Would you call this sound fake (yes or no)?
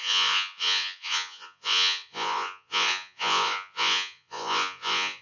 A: yes